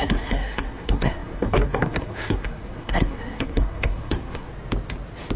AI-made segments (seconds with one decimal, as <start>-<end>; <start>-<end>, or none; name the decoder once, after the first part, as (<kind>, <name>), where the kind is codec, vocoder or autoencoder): 0.0-4.5 (codec, SNAC)